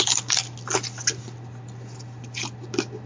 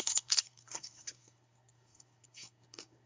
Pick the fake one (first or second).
second